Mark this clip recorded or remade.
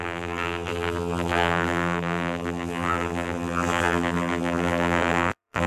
remade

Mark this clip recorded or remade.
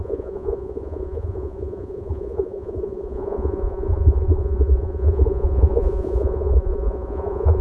remade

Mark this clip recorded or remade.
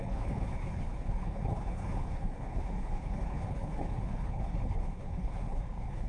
remade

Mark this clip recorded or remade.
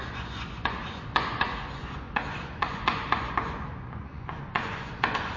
remade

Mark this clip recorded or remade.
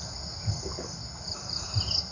recorded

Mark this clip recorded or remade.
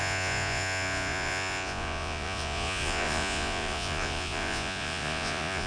remade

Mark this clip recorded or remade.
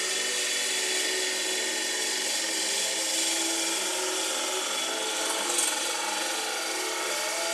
recorded